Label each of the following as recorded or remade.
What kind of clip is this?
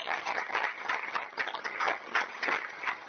remade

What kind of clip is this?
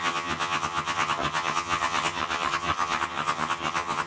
remade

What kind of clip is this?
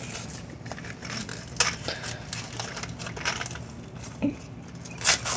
recorded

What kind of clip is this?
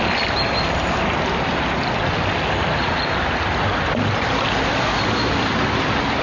recorded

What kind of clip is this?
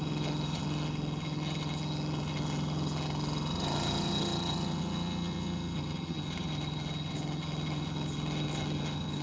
remade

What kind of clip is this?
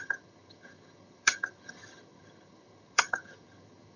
remade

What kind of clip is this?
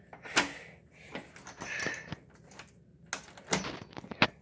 recorded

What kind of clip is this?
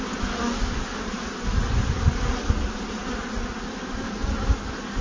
recorded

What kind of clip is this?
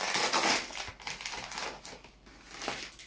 recorded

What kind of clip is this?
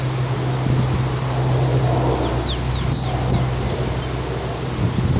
recorded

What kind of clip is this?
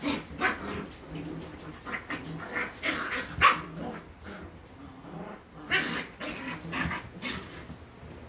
recorded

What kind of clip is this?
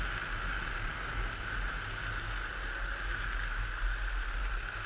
recorded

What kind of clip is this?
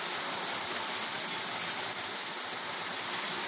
recorded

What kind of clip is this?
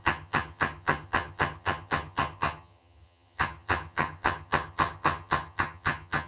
remade